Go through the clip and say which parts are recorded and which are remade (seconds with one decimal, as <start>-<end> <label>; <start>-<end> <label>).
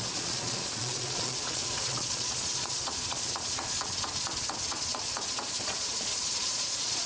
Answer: 0.0-7.1 remade